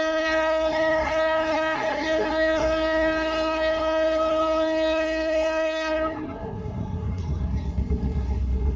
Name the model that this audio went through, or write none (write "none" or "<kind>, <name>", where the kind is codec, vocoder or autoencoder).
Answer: codec, SNAC